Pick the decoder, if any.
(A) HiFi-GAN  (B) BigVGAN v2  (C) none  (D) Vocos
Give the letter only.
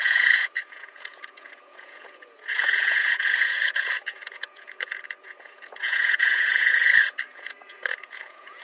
D